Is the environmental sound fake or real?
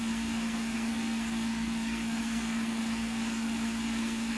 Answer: fake